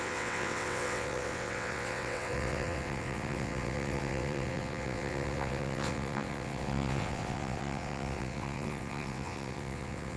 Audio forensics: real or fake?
fake